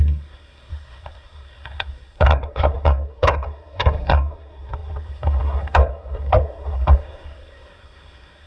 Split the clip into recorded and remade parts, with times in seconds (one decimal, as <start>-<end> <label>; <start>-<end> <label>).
0.0-8.5 remade